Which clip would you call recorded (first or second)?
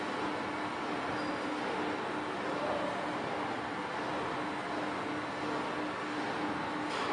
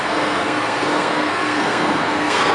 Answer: first